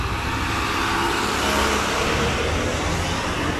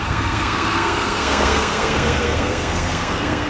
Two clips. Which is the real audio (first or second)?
first